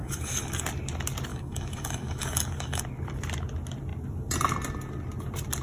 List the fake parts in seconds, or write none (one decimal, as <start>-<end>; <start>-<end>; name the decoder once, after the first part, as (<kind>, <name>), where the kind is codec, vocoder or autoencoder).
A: 0.0-0.6 (codec, DAC); 1.3-2.8